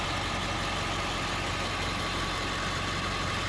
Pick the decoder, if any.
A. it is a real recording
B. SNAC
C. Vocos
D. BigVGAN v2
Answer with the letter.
A